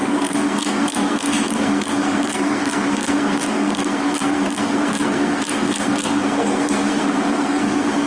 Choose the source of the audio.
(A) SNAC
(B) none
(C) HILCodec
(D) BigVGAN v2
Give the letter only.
A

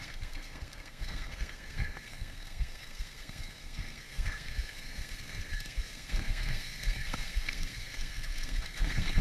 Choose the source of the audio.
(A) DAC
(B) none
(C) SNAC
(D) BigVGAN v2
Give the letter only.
C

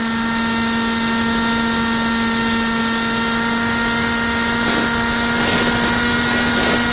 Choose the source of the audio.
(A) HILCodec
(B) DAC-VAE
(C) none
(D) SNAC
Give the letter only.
C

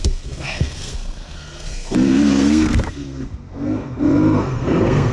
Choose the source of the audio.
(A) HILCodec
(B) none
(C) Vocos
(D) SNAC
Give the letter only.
D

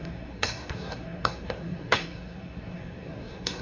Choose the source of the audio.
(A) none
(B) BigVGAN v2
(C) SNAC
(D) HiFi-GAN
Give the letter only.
C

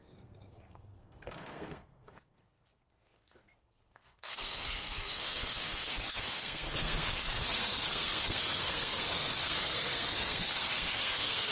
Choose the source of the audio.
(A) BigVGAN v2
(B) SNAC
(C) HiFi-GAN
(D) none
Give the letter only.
B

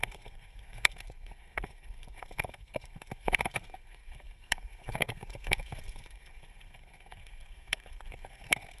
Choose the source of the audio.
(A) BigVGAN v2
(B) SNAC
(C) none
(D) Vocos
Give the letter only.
B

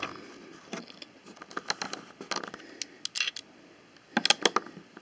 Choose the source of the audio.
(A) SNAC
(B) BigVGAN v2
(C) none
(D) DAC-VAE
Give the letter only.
C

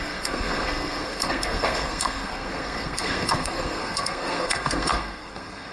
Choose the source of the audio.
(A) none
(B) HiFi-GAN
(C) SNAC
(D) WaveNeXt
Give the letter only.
C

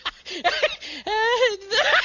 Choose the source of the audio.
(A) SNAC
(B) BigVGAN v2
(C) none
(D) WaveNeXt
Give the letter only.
C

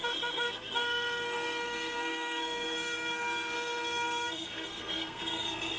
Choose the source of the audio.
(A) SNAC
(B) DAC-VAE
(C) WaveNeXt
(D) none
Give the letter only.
A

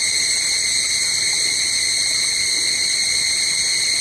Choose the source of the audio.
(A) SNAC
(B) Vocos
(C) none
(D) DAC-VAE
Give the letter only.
C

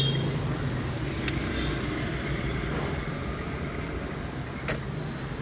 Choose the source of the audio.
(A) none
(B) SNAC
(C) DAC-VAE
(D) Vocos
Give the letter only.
A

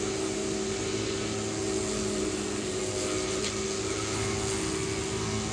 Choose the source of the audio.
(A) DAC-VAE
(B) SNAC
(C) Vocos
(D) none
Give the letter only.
D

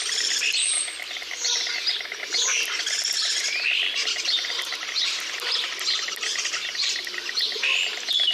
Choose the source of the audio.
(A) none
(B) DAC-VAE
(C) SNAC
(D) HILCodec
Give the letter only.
A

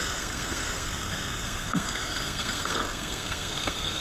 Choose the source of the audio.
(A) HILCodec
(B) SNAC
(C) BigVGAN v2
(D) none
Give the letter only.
B